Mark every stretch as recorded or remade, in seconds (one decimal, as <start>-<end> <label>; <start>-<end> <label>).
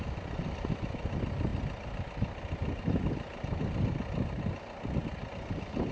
0.0-5.9 recorded